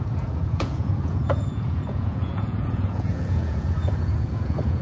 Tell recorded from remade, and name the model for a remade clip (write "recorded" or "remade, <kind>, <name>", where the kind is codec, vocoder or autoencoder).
remade, vocoder, Vocos